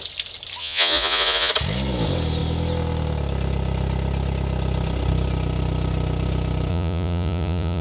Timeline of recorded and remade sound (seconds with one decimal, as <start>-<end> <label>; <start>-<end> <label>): 0.0-0.6 recorded; 0.6-1.5 remade; 1.5-6.7 recorded; 6.7-7.8 remade